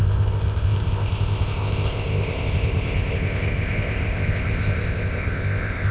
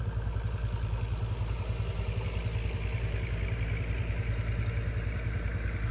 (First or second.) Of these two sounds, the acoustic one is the second